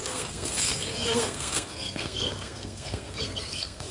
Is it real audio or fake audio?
fake